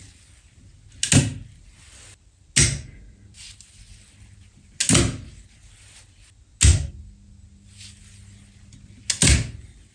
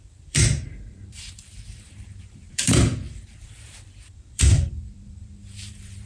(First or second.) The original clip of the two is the first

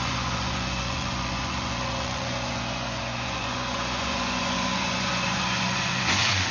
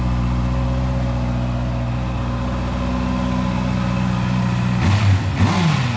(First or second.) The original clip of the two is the second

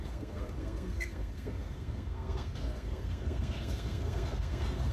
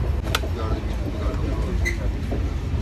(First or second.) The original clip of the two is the second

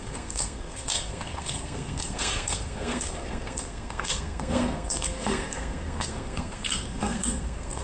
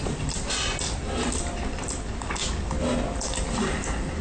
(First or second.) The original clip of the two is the second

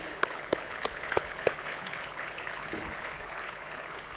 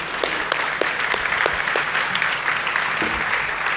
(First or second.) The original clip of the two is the second